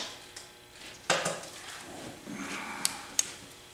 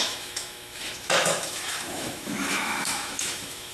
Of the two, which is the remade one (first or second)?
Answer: second